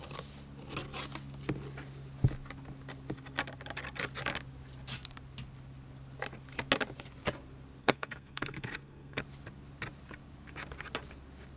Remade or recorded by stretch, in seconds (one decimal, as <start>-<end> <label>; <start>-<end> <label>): 0.0-7.8 recorded; 7.8-9.2 remade; 9.2-11.6 recorded